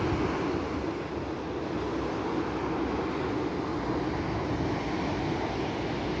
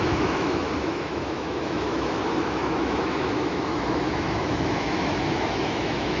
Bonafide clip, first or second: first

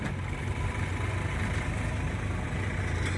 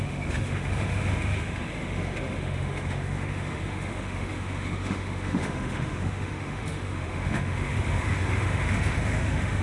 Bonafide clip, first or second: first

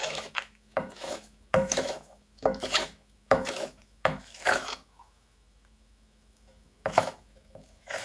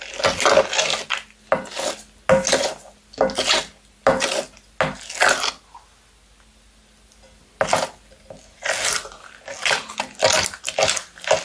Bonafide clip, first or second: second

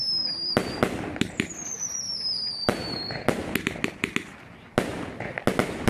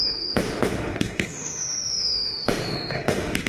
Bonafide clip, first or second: first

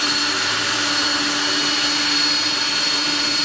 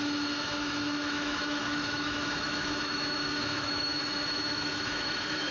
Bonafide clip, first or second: first